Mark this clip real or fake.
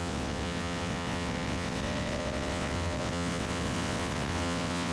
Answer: fake